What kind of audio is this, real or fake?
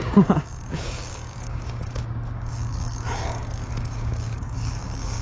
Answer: fake